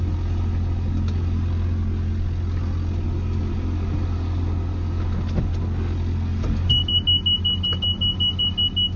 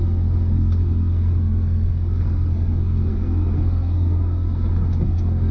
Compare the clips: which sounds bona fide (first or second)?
first